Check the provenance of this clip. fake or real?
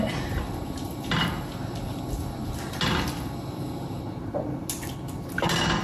real